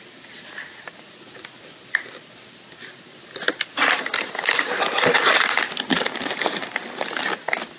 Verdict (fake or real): real